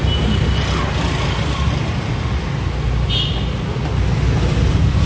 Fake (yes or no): no